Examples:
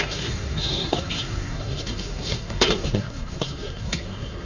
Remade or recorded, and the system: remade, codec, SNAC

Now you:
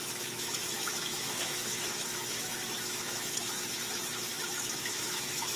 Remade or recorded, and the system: remade, autoencoder, DAC-VAE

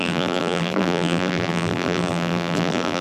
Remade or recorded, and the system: remade, vocoder, BigVGAN v2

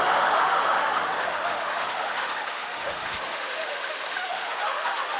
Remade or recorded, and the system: remade, autoencoder, DAC-VAE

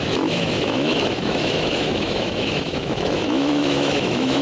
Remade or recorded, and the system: remade, autoencoder, DAC-VAE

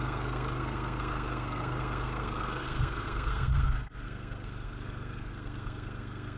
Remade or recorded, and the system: remade, codec, SNAC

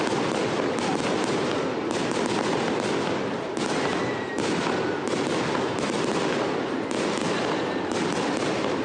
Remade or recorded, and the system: recorded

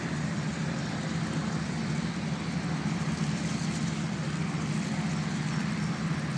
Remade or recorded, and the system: recorded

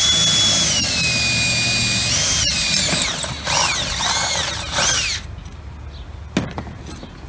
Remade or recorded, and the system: recorded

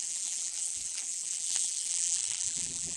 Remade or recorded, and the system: remade, vocoder, BigVGAN v2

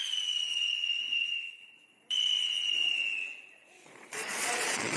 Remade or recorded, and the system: remade, vocoder, Vocos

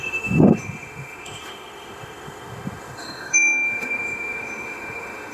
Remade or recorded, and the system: remade, autoencoder, DAC-VAE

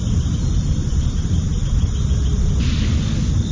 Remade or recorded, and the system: recorded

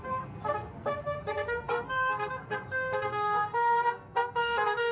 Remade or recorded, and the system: remade, codec, SNAC